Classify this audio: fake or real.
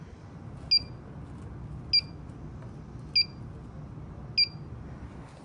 real